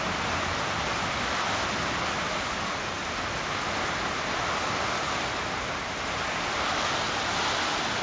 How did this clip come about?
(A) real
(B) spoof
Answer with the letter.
A